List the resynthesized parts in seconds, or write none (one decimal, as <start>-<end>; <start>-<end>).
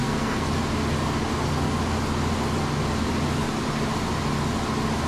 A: 0.0-0.5